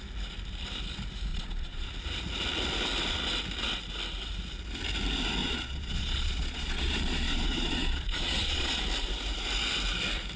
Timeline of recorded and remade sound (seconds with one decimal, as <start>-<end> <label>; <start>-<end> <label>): 0.0-1.3 recorded; 1.3-1.9 remade; 1.9-5.4 recorded; 5.4-8.8 remade; 8.8-10.4 recorded